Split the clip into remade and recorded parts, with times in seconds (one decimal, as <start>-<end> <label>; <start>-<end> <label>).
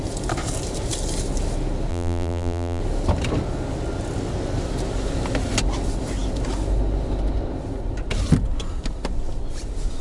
0.0-1.9 recorded; 1.9-2.8 remade; 2.8-10.0 recorded